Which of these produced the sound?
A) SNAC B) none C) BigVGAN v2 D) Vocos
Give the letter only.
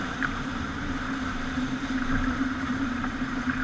C